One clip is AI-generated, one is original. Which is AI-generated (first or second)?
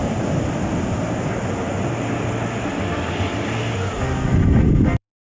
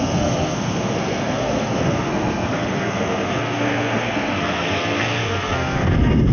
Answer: second